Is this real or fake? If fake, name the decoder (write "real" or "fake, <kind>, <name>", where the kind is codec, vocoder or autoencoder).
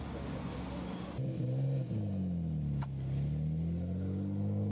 real